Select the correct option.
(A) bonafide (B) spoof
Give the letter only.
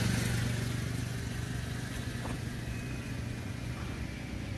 B